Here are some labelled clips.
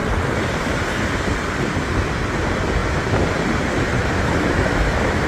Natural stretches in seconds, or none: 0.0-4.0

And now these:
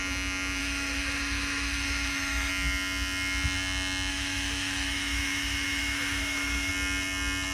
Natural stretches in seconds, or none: 0.0-0.6; 2.5-4.1; 6.7-7.5

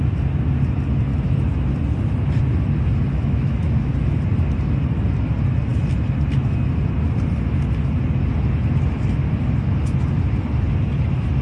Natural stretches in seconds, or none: 0.0-3.1; 3.9-11.4

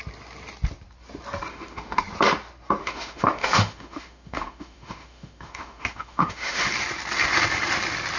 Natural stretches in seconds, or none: 0.0-1.5; 2.0-2.8; 6.7-8.2

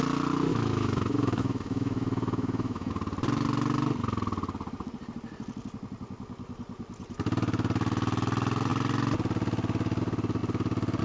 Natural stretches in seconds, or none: 0.0-0.5; 2.9-11.0

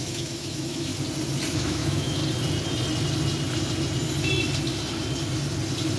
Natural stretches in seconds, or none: 0.9-1.5; 2.2-6.0

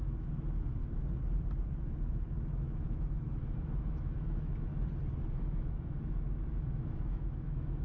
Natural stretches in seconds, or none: 0.8-2.1; 4.7-5.3